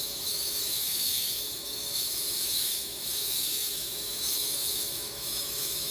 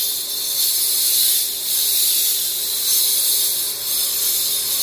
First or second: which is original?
second